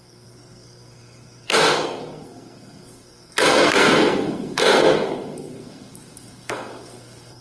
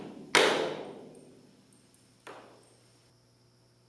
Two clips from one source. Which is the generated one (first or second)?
first